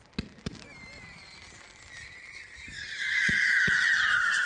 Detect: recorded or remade recorded